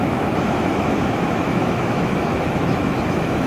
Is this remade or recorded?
remade